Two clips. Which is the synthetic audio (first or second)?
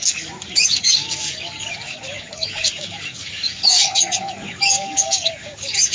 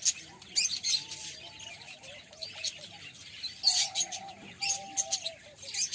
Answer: first